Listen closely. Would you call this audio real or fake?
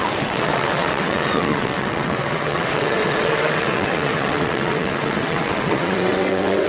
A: fake